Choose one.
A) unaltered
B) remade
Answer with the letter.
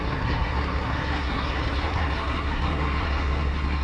B